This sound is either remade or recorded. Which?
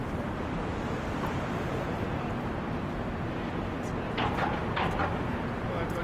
recorded